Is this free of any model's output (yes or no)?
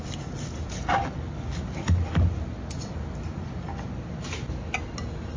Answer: yes